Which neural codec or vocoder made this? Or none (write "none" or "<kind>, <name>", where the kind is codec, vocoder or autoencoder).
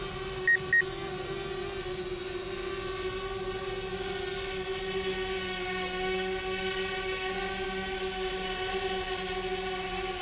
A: none